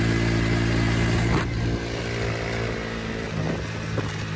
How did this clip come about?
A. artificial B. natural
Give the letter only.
B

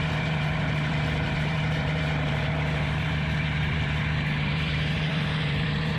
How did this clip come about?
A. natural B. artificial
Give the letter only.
B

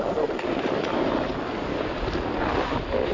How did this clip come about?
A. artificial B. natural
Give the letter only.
B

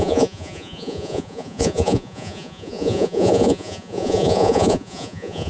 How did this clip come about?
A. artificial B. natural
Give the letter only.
A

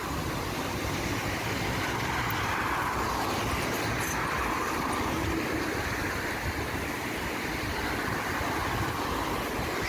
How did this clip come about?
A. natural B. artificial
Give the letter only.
A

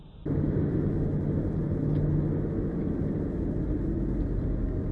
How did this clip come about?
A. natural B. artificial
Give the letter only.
A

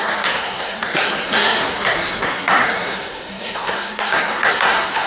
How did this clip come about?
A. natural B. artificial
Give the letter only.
B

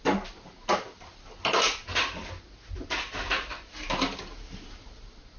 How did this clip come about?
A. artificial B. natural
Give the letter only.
B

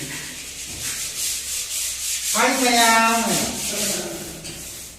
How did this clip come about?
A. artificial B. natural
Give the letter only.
B